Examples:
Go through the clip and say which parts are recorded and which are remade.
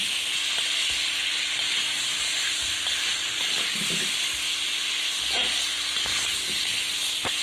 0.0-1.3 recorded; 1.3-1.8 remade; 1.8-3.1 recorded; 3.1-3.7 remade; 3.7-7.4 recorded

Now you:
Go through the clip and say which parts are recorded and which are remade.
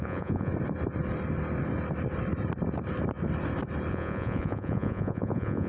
0.0-0.5 remade; 0.5-3.9 recorded; 3.9-5.7 remade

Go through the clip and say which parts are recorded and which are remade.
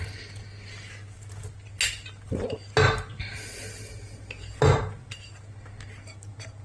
0.0-6.6 recorded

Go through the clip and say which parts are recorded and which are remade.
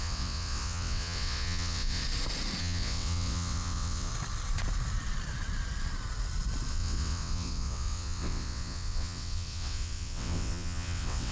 0.0-2.0 remade; 2.0-2.6 recorded; 2.6-4.1 remade; 4.1-6.7 recorded; 6.7-11.3 remade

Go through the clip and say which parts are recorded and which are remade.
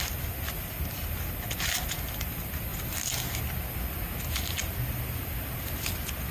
0.0-6.3 recorded